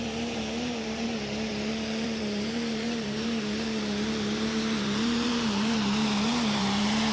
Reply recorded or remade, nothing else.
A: remade